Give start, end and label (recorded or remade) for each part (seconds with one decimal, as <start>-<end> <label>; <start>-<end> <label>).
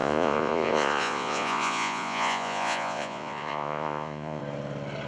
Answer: 0.0-4.4 remade; 4.4-5.1 recorded